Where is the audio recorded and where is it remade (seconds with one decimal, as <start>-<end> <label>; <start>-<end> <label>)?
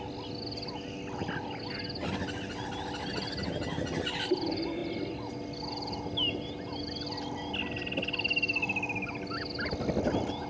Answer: 0.0-10.5 recorded